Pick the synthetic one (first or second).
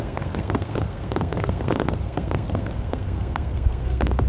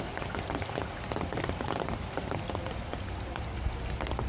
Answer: first